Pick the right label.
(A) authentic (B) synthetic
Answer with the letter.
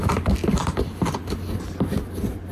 A